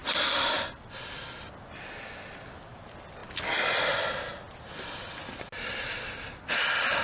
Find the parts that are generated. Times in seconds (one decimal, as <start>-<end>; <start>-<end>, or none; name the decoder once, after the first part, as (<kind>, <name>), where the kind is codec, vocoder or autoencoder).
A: none